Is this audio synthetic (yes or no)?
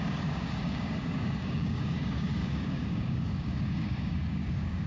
yes